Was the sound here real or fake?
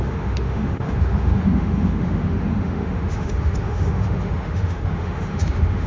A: fake